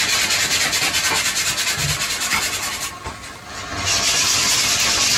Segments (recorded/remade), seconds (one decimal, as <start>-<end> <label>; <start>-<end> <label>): 0.0-1.8 recorded; 1.8-5.2 remade